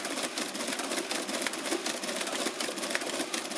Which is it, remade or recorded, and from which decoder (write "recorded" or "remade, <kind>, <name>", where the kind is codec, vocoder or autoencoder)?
recorded